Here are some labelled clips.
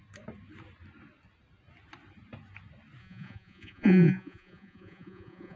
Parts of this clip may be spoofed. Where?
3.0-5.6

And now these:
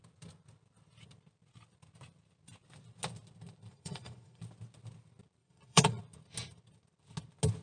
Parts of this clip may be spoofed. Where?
3.7-4.4; 5.4-6.0

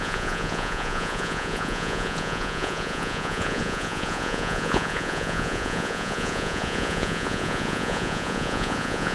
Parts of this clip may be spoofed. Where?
0.0-9.1